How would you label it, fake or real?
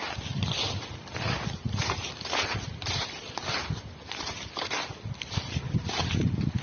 real